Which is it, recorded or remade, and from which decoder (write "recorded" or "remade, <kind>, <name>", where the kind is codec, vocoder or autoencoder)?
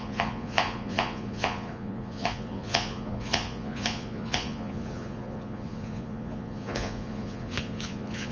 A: remade, vocoder, Vocos